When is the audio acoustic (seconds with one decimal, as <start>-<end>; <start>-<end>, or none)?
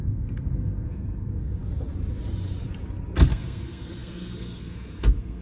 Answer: 1.6-3.3